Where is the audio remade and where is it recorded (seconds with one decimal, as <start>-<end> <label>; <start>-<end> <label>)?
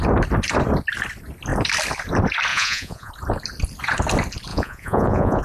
0.0-2.5 recorded; 2.5-3.1 remade; 3.1-4.5 recorded; 4.5-5.4 remade